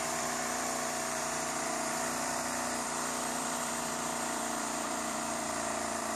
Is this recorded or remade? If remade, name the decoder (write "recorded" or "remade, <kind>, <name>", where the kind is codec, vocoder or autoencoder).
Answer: remade, vocoder, BigVGAN v2